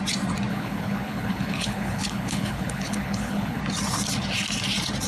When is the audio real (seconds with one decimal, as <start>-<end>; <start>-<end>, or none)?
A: 0.0-0.5; 3.6-5.1